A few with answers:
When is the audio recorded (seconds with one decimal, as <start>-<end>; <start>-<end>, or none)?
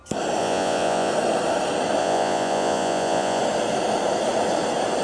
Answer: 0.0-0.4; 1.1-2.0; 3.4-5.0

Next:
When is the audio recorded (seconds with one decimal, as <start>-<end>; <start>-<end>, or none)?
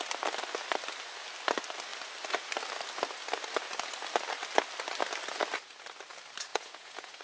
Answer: 0.0-6.5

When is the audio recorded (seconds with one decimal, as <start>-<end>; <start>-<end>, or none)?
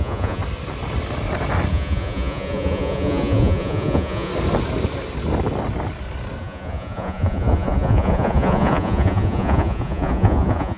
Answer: 0.4-1.7; 4.3-6.4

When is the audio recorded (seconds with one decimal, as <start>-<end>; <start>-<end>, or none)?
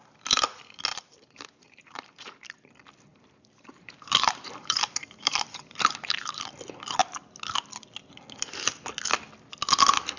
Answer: 0.0-0.9; 2.7-3.1; 6.4-10.2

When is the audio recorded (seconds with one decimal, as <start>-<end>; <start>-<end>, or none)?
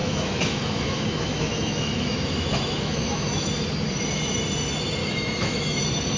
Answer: 3.5-5.0; 5.8-6.2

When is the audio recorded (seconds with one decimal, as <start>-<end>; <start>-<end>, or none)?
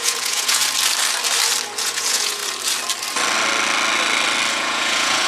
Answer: 0.6-1.8; 2.4-4.5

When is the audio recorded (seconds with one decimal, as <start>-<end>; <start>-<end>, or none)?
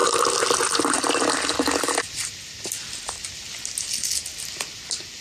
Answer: 0.0-5.2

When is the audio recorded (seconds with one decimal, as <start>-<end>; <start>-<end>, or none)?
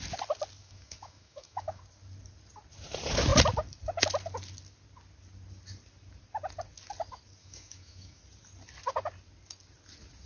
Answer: 0.0-0.6; 1.8-7.4; 8.2-10.3